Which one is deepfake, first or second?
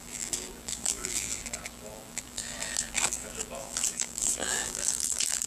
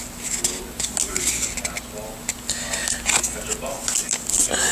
first